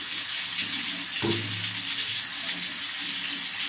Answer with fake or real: real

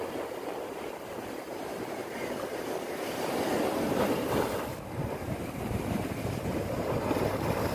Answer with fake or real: real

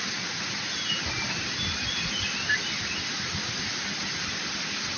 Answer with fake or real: real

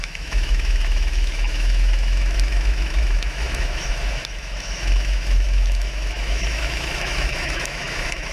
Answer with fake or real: fake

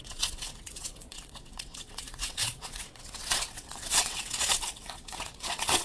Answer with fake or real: fake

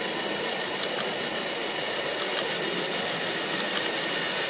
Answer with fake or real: real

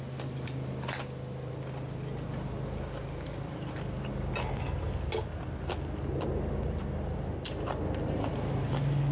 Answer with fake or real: real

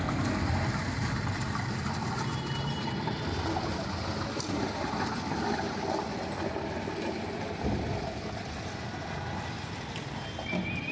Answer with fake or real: real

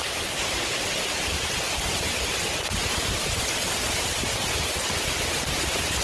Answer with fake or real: fake